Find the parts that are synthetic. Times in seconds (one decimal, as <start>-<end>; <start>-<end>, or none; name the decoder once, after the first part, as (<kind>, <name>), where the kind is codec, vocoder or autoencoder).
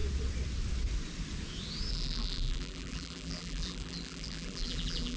1.9-5.2 (vocoder, BigVGAN v2)